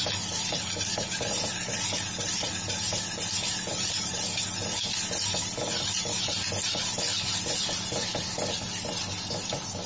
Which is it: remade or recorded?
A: recorded